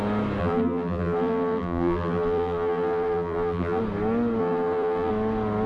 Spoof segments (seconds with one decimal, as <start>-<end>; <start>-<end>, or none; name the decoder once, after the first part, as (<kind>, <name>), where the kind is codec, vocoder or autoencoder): 0.4-3.8 (vocoder, BigVGAN v2); 4.4-5.1